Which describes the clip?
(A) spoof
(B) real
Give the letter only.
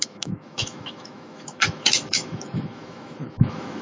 A